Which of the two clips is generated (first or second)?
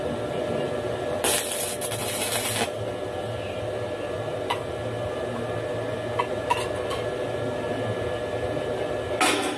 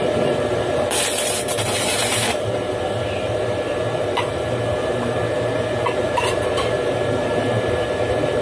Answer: second